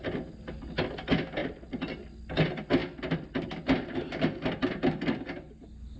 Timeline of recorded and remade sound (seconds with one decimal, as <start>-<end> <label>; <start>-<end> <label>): 0.0-6.0 recorded

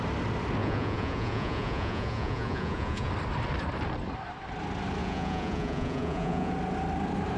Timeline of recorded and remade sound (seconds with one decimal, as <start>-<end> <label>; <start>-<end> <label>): 0.0-0.6 recorded; 0.6-3.1 remade; 3.1-5.0 recorded; 5.0-6.5 remade; 6.5-7.4 recorded

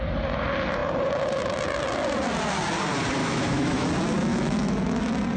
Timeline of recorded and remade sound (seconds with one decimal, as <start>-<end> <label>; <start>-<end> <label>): 0.0-3.2 recorded; 3.2-3.9 remade; 3.9-4.3 recorded; 4.3-5.0 remade; 5.0-5.4 recorded

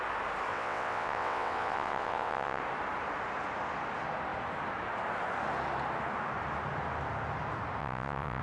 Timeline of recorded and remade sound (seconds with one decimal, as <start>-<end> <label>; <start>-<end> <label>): 0.0-0.5 recorded; 0.5-2.6 remade; 2.6-7.8 recorded; 7.8-8.4 remade

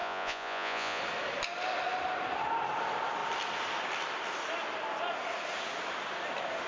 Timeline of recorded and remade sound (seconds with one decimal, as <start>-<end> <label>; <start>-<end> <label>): 0.0-1.0 remade; 1.0-6.7 recorded

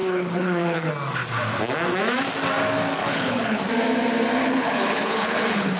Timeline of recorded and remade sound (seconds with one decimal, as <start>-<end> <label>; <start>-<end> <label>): 0.0-0.9 remade; 0.9-3.0 recorded; 3.0-3.6 remade; 3.6-4.4 recorded; 4.4-5.8 remade

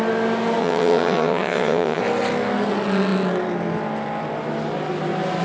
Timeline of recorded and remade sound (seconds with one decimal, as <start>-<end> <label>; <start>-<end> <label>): 0.0-0.6 recorded; 0.6-2.0 remade; 2.0-5.4 recorded

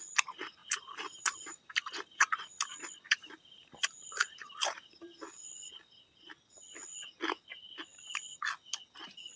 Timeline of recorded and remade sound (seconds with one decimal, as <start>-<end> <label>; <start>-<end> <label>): 0.0-0.6 recorded; 0.6-5.3 remade; 5.3-9.4 recorded